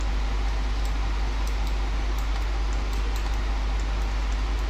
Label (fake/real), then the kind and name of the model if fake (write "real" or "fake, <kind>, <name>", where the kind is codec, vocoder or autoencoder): real